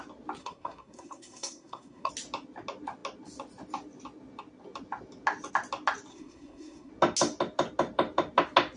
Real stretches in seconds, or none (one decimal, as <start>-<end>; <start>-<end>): 0.0-0.4; 2.1-6.1; 6.9-8.8